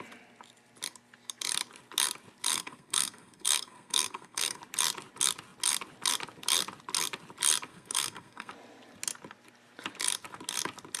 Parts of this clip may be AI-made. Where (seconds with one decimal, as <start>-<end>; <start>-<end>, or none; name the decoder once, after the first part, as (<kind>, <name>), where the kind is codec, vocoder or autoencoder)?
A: 2.5-4.6 (codec, SNAC); 7.7-8.5